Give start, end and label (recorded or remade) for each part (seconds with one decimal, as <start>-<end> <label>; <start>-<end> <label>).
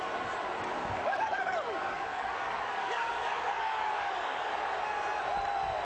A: 0.0-1.0 recorded; 1.0-4.5 remade; 4.5-5.8 recorded